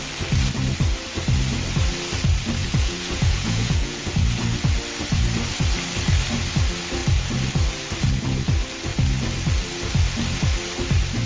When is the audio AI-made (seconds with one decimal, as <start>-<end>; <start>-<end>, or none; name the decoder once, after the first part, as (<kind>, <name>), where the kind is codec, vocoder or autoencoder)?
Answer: 2.6-4.1 (vocoder, Vocos)